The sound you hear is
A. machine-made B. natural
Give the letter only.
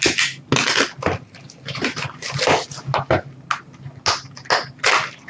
B